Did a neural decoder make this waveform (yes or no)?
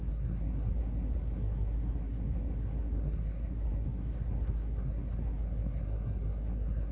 yes